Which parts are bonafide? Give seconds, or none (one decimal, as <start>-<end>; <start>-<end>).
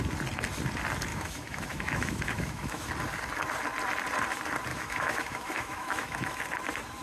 0.0-1.1; 2.9-4.7; 6.4-7.0